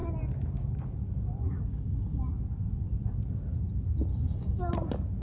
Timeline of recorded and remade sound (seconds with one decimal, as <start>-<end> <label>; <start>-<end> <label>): 0.0-1.7 recorded; 1.7-2.3 remade; 2.3-4.1 recorded; 4.1-4.6 remade; 4.6-5.2 recorded